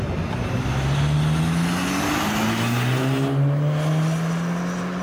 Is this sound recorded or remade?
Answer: recorded